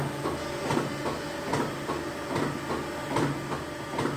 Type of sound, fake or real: real